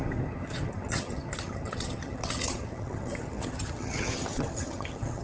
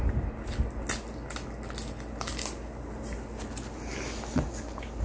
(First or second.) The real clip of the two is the second